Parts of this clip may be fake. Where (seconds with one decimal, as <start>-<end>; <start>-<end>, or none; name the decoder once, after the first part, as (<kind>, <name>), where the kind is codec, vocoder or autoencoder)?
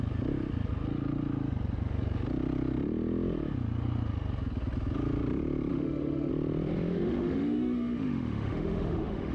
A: 5.7-6.3 (autoencoder, DAC-VAE); 6.9-9.3